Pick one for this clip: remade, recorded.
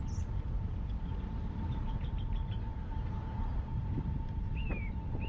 remade